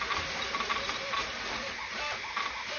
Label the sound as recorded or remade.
recorded